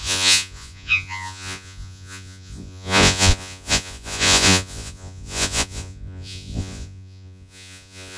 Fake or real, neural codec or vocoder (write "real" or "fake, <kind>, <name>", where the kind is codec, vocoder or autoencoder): fake, vocoder, Vocos